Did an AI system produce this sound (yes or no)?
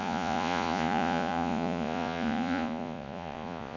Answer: yes